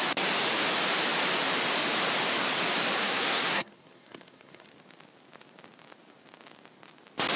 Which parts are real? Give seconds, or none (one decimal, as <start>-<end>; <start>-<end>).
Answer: 0.0-3.0; 4.7-7.4